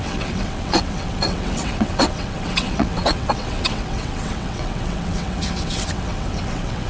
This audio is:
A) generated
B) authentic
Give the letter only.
A